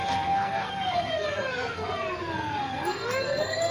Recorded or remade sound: remade